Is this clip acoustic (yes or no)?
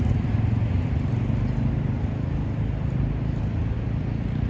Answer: yes